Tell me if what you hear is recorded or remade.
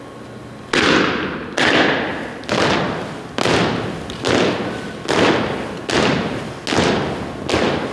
recorded